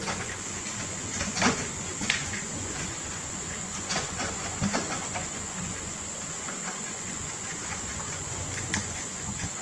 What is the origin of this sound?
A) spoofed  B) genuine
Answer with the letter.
A